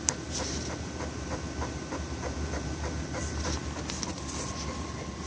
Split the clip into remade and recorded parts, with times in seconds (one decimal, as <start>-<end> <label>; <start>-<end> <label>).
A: 0.0-3.6 remade; 3.6-4.1 recorded; 4.1-5.3 remade